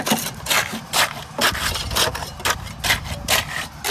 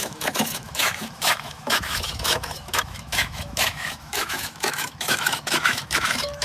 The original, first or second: first